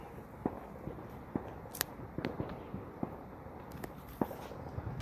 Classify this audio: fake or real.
real